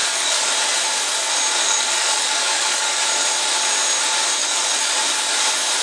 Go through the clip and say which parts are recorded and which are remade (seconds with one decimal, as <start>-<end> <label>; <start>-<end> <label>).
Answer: 0.0-0.5 remade; 0.5-1.6 recorded; 1.6-3.0 remade; 3.0-4.4 recorded; 4.4-5.0 remade; 5.0-5.8 recorded